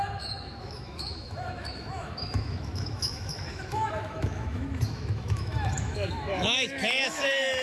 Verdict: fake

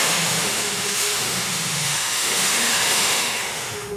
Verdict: fake